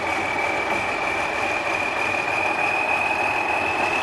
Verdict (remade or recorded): recorded